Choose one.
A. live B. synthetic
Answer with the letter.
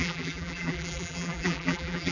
B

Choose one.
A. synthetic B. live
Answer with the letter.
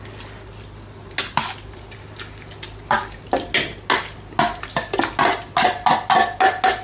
B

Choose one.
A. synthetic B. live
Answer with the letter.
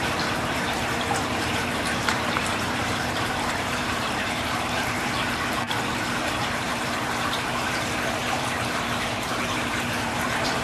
A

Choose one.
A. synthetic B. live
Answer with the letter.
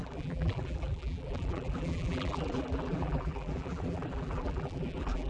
A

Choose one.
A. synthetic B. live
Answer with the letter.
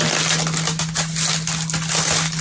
B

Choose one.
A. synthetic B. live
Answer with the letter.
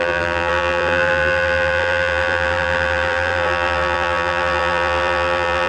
A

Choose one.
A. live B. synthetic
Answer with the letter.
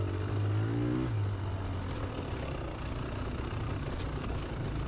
A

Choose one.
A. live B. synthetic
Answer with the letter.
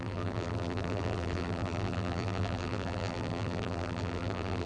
B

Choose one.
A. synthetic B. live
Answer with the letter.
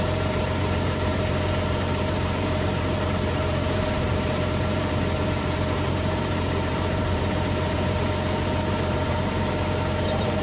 A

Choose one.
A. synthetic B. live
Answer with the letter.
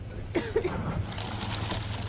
B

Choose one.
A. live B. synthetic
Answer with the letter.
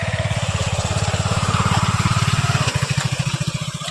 B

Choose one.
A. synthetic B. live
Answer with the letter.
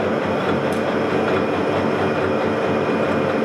B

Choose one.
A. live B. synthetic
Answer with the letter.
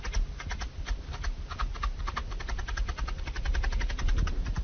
B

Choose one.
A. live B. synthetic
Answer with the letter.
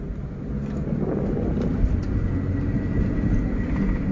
A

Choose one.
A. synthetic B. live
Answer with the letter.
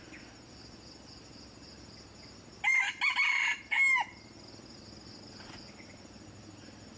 B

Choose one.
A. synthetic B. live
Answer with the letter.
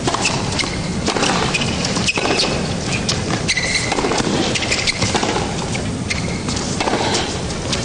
A